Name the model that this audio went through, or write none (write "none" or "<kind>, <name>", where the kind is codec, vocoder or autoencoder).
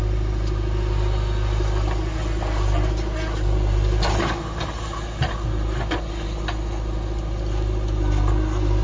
none